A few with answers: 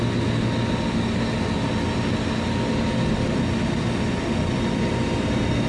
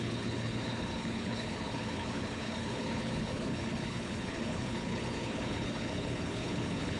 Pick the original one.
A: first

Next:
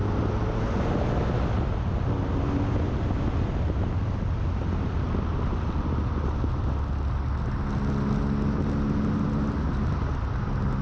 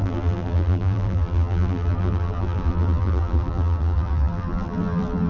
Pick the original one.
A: first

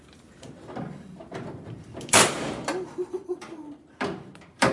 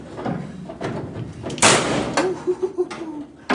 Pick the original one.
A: second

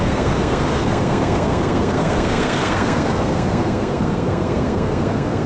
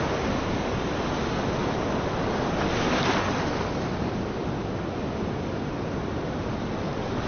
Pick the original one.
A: second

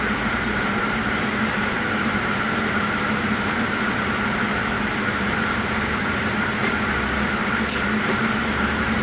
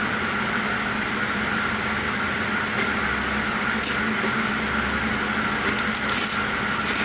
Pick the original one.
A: second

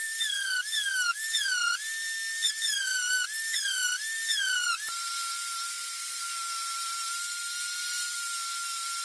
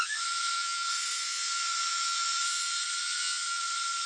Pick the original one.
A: first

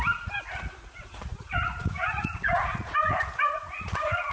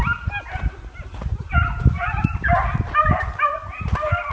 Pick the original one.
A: second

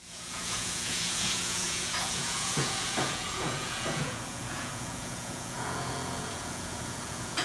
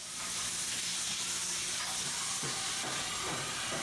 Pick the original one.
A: second